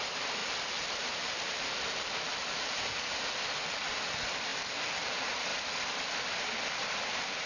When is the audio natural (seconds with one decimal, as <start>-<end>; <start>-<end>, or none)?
0.0-0.4; 2.7-4.5; 5.1-7.5